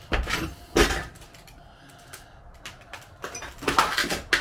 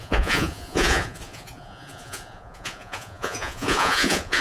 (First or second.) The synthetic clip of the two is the second